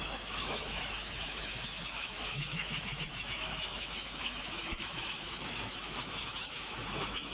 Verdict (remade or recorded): remade